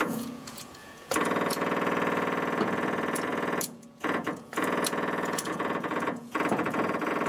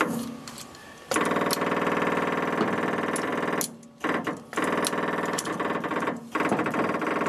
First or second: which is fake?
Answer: first